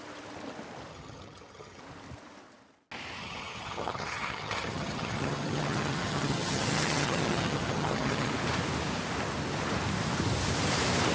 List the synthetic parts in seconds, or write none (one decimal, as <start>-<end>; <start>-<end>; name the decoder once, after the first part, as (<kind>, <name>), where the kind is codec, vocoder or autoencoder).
0.9-1.8 (vocoder, HiFi-GAN); 3.2-8.3